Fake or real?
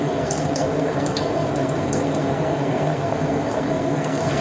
fake